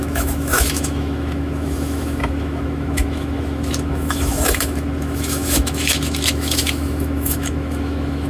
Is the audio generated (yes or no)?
yes